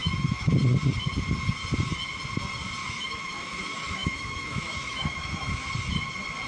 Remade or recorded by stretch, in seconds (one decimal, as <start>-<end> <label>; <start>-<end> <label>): 0.0-0.5 remade; 0.5-2.8 recorded; 2.8-5.7 remade; 5.7-6.5 recorded

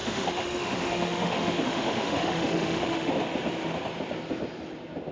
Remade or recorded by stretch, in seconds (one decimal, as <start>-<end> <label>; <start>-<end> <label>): 0.0-3.1 remade; 3.1-5.1 recorded

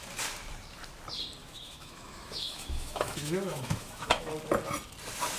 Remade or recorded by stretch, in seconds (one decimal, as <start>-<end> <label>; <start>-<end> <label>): 0.0-1.4 recorded; 1.4-4.3 remade; 4.3-5.4 recorded

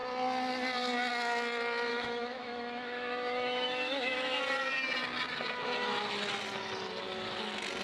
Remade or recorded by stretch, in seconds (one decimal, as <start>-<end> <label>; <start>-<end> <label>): 0.0-1.9 recorded; 1.9-4.4 remade; 4.4-7.8 recorded

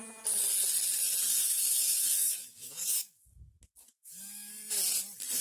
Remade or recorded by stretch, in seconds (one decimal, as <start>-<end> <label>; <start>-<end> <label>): 0.0-1.3 recorded; 1.3-4.5 remade; 4.5-5.4 recorded

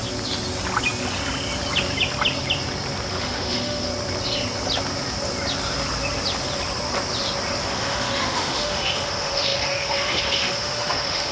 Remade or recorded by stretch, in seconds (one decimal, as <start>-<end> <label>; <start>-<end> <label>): 0.0-3.1 recorded; 3.1-3.9 remade; 3.9-7.6 recorded; 7.6-11.3 remade

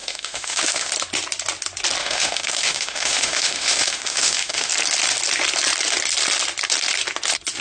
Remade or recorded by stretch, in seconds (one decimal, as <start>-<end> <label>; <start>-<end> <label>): 0.0-0.9 remade; 0.9-2.0 recorded; 2.0-4.7 remade; 4.7-7.6 recorded

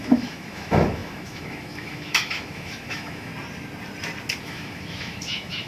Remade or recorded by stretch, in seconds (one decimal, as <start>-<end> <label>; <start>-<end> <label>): 0.0-3.3 remade; 3.3-4.4 recorded; 4.4-5.7 remade